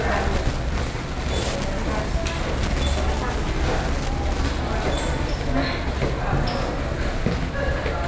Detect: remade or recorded recorded